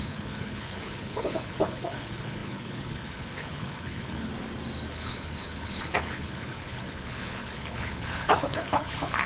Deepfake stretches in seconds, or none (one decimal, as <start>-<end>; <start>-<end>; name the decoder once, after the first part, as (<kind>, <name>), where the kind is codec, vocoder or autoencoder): 0.0-4.3 (codec, HILCodec); 4.9-9.3